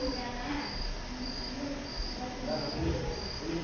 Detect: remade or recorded recorded